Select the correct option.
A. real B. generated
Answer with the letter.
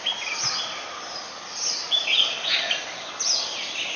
A